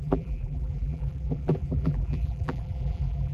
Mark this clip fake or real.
fake